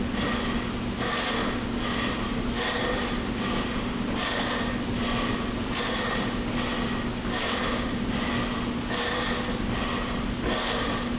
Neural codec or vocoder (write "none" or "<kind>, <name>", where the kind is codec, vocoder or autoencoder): none